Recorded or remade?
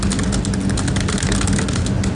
recorded